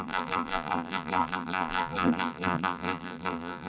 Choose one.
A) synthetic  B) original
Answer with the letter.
A